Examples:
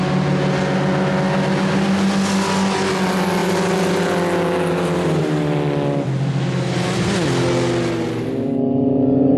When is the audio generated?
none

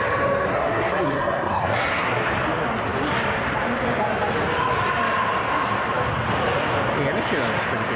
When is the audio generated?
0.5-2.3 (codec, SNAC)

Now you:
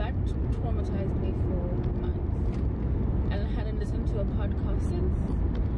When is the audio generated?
none

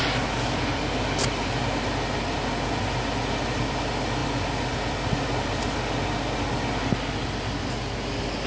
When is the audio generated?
none

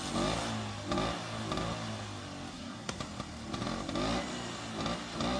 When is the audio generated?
2.5-3.0 (codec, SNAC)

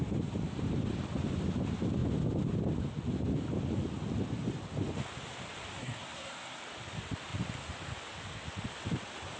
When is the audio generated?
5.8-6.6 (codec, SNAC)

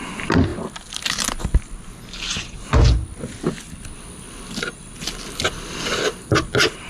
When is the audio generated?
none

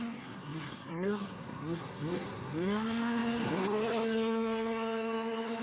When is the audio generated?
0.0-5.6 (codec, SNAC)